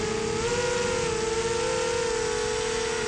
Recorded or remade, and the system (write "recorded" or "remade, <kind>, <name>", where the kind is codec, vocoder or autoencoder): recorded